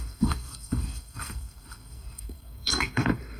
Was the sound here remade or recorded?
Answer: remade